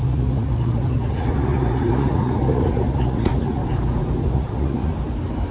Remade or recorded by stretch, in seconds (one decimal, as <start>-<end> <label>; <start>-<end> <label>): 0.0-3.6 remade; 3.6-4.3 recorded; 4.3-4.9 remade; 4.9-5.5 recorded